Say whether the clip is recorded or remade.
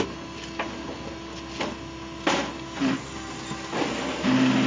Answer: recorded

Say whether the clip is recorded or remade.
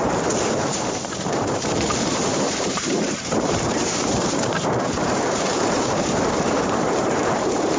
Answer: remade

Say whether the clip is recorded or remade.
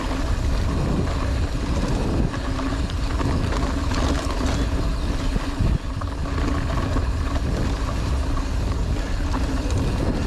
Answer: recorded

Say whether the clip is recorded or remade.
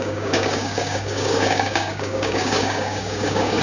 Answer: remade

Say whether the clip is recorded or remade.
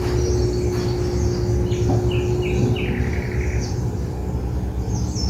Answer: recorded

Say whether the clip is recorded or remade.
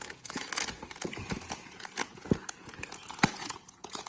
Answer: remade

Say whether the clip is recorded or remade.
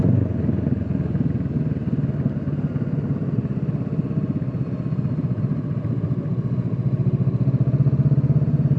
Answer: recorded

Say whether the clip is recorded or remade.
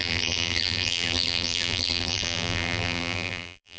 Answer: remade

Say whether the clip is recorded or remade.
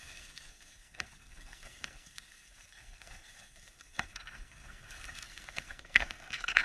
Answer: remade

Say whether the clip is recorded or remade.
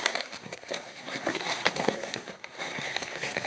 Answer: remade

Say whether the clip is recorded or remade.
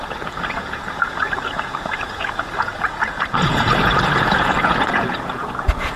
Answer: remade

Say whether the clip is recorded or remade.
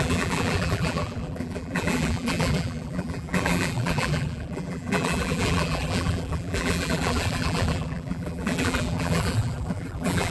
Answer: remade